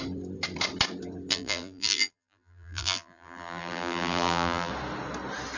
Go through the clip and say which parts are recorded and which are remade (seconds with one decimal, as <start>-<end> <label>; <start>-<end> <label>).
0.0-1.3 recorded; 1.3-4.7 remade; 4.7-5.6 recorded